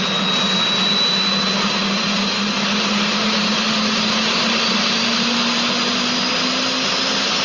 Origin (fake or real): real